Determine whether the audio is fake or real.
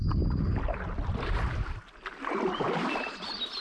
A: real